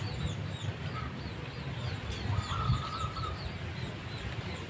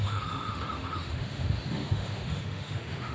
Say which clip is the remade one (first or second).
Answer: second